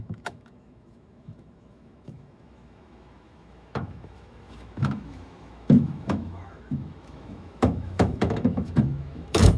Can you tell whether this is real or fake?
fake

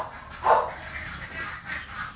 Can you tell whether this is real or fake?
real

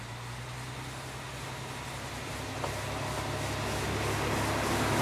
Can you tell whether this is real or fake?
real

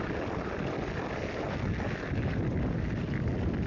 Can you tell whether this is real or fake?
real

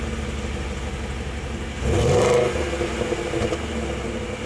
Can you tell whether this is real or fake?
real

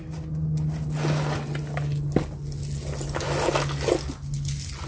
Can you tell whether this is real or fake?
real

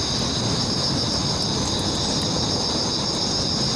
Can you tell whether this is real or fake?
real